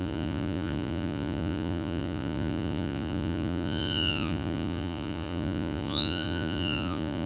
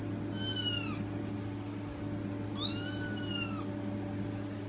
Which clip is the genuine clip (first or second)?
second